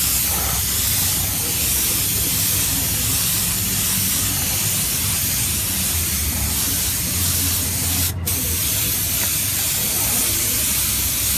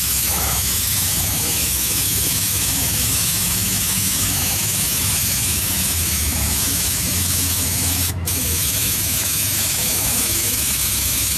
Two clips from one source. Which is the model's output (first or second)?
second